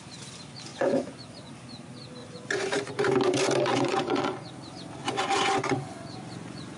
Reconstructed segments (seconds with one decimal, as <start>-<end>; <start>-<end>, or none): 0.7-1.5; 2.2-2.9; 3.7-4.5; 5.0-6.8